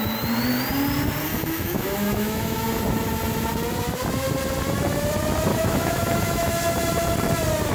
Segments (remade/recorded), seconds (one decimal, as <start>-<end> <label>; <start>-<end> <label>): 0.0-1.3 recorded; 1.3-2.8 remade; 2.8-5.5 recorded; 5.5-6.5 remade; 6.5-7.7 recorded